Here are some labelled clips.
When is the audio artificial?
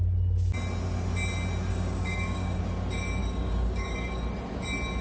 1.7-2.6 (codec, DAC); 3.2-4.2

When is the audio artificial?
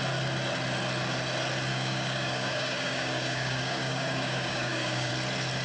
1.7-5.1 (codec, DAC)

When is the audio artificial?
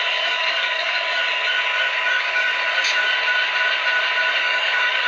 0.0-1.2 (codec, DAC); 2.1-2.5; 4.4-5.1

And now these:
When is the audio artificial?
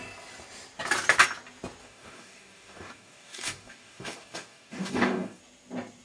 1.8-5.4 (codec, DAC)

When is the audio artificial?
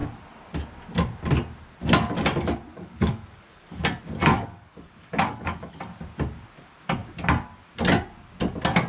2.7-3.8 (codec, DAC); 4.3-5.8